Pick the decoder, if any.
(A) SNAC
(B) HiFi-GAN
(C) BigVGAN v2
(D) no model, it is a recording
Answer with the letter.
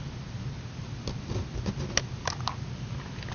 D